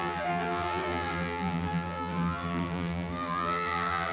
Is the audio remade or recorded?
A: remade